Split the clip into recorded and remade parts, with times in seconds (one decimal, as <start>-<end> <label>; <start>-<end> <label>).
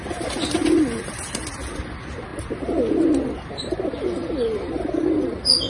0.0-5.7 recorded